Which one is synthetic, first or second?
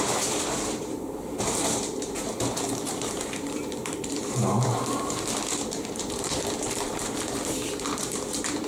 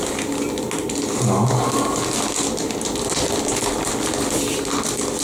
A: first